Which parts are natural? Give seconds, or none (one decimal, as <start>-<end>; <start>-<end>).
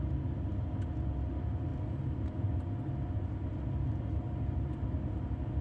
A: 0.0-5.6